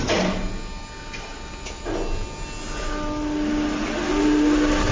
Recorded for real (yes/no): yes